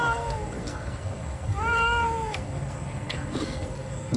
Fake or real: fake